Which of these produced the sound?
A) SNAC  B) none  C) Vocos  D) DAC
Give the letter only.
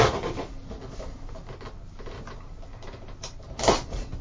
B